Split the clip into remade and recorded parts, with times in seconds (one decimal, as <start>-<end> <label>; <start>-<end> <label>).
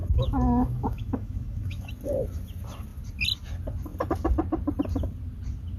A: 0.0-1.9 remade; 1.9-5.8 recorded